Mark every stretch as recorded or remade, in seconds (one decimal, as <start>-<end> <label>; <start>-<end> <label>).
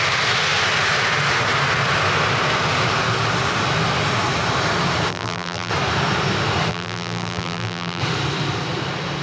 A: 0.0-5.1 recorded; 5.1-5.7 remade; 5.7-6.7 recorded; 6.7-8.0 remade; 8.0-9.2 recorded